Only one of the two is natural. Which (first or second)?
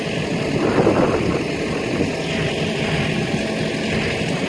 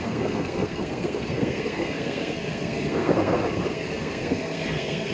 first